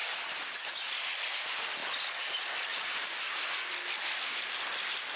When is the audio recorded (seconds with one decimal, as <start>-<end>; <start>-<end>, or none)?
0.8-5.2